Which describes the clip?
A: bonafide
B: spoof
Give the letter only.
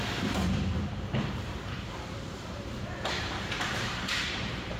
B